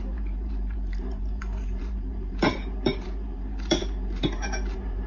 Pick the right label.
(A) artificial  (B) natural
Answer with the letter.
A